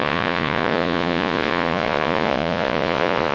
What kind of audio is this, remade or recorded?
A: remade